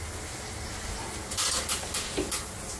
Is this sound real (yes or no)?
yes